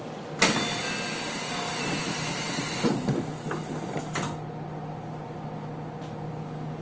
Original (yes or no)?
yes